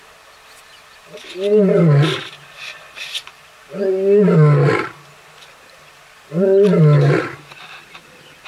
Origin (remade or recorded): recorded